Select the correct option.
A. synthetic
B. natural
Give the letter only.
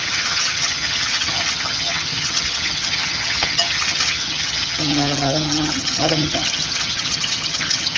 A